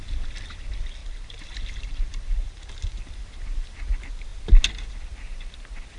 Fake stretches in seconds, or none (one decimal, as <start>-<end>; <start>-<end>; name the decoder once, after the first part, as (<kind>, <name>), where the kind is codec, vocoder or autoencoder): 1.0-2.7 (vocoder, BigVGAN v2)